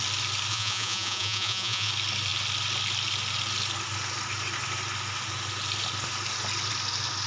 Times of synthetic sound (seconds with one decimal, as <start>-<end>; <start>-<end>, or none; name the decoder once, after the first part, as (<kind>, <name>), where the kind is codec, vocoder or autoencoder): 0.5-1.9 (vocoder, Vocos)